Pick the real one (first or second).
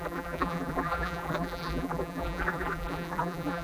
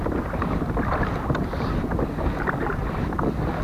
second